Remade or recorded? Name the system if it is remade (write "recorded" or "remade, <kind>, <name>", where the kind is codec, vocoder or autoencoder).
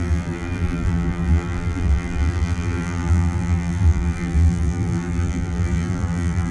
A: remade, vocoder, BigVGAN v2